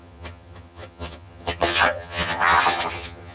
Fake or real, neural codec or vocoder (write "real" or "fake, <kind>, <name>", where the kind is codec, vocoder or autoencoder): fake, vocoder, HiFi-GAN